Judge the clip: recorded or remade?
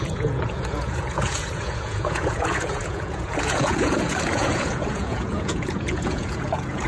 remade